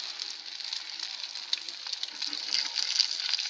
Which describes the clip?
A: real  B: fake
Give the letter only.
A